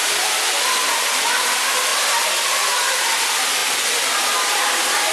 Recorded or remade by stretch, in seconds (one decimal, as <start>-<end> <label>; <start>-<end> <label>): 0.0-5.1 recorded